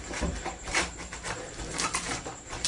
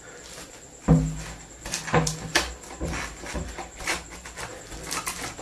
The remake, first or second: first